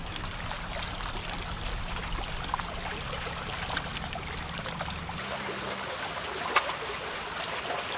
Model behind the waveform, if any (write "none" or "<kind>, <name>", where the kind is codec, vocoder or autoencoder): none